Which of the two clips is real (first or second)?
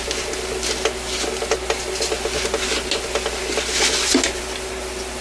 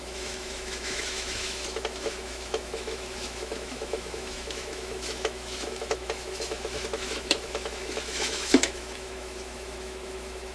first